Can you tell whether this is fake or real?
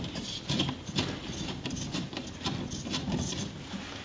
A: real